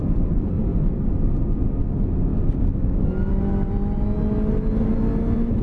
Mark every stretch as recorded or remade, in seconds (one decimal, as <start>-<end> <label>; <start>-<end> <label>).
0.0-5.6 recorded